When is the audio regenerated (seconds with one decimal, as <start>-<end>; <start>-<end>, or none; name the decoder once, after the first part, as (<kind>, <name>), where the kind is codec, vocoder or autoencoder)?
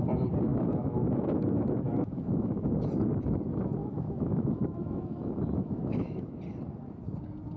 0.5-2.7 (autoencoder, DAC-VAE); 3.8-6.4